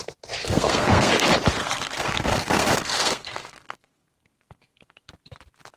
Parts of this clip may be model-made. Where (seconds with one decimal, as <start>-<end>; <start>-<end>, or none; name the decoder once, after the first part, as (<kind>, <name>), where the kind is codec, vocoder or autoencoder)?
0.4-1.1 (codec, SNAC); 1.6-5.1